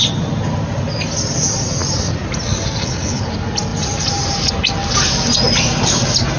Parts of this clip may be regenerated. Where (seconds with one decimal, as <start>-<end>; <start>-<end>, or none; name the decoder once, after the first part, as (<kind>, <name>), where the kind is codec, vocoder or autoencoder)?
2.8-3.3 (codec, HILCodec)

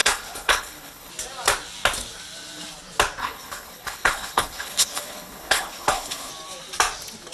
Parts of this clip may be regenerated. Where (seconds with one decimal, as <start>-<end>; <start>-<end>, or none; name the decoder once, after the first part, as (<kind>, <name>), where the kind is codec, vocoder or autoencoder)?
0.0-1.1 (codec, HILCodec); 3.2-6.3

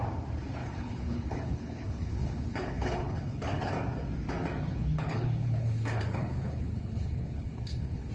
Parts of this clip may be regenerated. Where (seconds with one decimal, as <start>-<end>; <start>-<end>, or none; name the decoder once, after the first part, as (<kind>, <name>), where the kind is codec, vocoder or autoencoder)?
0.6-3.7 (codec, HILCodec); 4.7-8.1

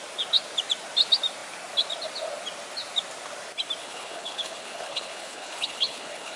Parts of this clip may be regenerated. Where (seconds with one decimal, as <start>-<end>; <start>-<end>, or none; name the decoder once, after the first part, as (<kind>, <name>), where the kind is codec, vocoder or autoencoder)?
3.8-6.4 (codec, HILCodec)